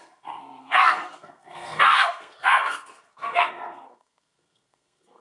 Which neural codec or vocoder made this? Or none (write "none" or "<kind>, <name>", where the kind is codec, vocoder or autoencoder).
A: codec, SNAC